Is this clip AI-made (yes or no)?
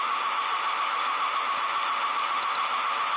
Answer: no